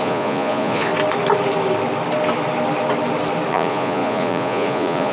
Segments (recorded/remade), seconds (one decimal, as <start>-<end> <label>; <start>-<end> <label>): 0.0-0.9 remade; 0.9-3.5 recorded; 3.5-5.1 remade